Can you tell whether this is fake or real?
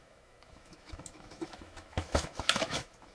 fake